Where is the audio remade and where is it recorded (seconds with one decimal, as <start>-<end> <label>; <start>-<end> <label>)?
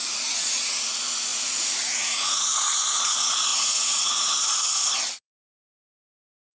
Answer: 0.0-6.5 remade